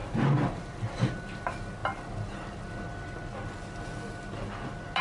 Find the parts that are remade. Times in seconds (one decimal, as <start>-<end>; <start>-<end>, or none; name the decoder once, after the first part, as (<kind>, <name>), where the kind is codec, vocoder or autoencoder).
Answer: none